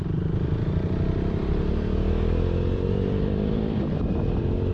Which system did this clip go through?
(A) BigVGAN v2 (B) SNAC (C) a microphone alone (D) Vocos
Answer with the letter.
A